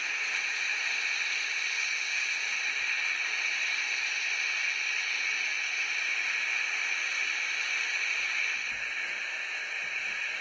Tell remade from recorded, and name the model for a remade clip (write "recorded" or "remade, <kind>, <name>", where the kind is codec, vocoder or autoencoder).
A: recorded